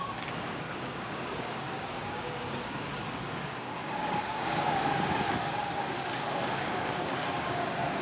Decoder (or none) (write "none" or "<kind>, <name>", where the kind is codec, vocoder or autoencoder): codec, DAC